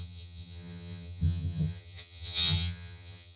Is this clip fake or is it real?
fake